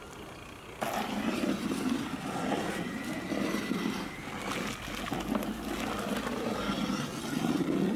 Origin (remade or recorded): recorded